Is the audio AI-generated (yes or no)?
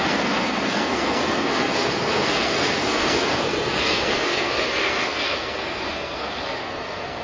yes